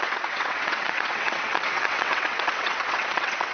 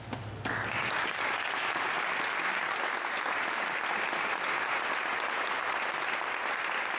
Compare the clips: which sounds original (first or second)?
second